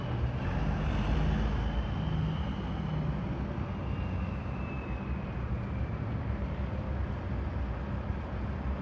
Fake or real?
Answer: real